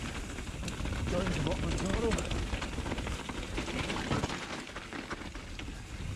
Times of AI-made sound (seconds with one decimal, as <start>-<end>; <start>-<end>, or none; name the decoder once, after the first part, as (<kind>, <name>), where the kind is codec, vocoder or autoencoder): none